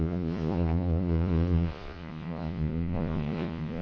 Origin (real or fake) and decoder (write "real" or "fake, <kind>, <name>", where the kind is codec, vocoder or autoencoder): fake, vocoder, Vocos